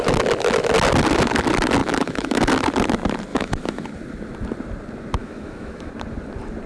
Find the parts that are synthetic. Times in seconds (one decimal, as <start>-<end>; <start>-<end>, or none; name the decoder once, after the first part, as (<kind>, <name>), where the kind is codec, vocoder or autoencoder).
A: 1.8-2.5 (autoencoder, DAC-VAE); 3.3-3.9; 5.2-5.9